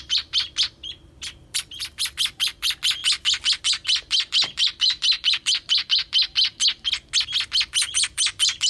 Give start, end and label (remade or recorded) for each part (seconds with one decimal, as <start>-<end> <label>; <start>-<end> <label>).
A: 0.0-3.0 remade; 3.0-3.6 recorded; 3.6-6.3 remade; 6.3-7.9 recorded; 7.9-8.7 remade